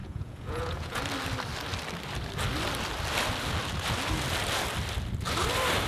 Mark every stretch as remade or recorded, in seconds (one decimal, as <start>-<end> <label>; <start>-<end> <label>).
0.0-1.0 remade; 1.0-5.9 recorded